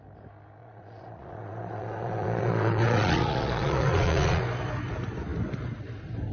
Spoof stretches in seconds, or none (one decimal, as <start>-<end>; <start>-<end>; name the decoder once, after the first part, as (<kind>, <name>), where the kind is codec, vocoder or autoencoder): 0.6-4.4 (vocoder, Vocos)